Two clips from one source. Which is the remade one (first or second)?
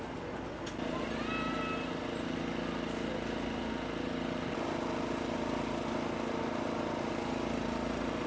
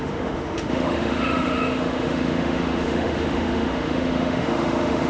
second